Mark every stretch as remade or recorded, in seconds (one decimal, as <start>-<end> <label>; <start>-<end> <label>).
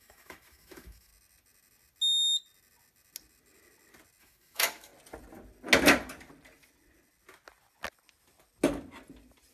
0.0-1.1 remade; 1.1-4.2 recorded; 4.2-4.9 remade; 4.9-9.5 recorded